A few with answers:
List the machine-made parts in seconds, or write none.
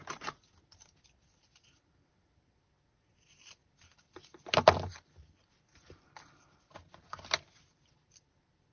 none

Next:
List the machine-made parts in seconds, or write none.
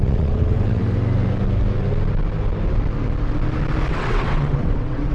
0.0-0.8 (vocoder, WaveNeXt); 3.9-5.1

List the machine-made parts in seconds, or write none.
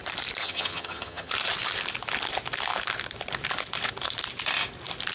0.4-1.3 (vocoder, HiFi-GAN)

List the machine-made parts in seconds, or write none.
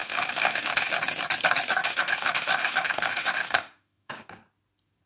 0.0-0.9 (autoencoder, DAC-VAE); 1.8-4.3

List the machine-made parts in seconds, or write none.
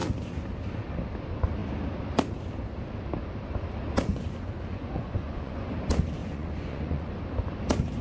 4.1-5.7 (vocoder, Vocos); 6.2-7.1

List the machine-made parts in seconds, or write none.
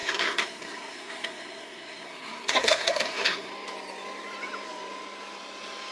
0.0-3.5 (codec, SNAC)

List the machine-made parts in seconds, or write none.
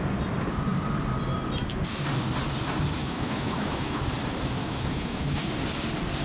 3.0-4.0 (autoencoder, DAC-VAE); 4.6-5.4